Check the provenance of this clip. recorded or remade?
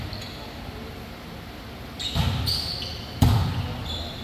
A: recorded